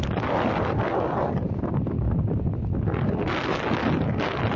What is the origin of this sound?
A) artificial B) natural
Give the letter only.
B